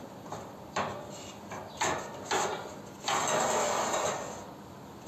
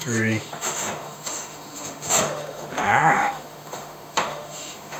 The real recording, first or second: first